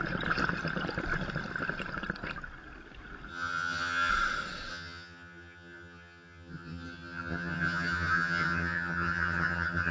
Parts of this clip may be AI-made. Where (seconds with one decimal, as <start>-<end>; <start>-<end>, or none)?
3.3-4.1; 4.7-9.9